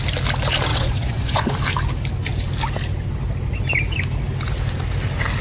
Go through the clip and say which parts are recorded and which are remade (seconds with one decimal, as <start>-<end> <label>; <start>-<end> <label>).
0.0-0.7 recorded; 0.7-1.5 remade; 1.5-5.4 recorded

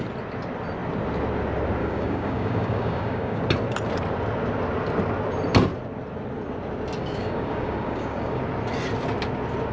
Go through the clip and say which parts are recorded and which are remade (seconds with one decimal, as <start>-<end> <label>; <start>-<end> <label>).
0.0-1.8 recorded; 1.8-3.4 remade; 3.4-7.0 recorded; 7.0-8.4 remade; 8.4-9.7 recorded

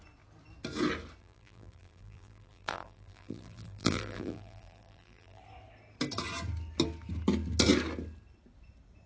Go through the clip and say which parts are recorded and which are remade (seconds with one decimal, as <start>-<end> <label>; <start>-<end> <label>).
0.0-1.2 recorded; 1.2-5.4 remade; 5.4-9.1 recorded

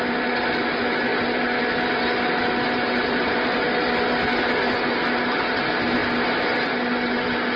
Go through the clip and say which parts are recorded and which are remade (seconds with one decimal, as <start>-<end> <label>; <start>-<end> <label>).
0.0-7.6 recorded

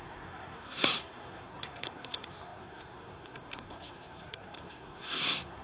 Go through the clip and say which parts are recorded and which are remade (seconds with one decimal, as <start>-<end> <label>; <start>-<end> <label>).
0.0-5.6 remade

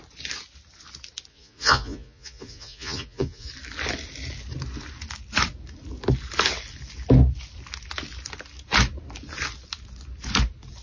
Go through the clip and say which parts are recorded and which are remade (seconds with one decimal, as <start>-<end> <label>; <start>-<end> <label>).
0.0-1.3 recorded; 1.3-3.5 remade; 3.5-10.8 recorded